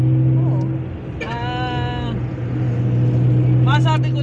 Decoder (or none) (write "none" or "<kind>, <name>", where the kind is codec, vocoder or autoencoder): none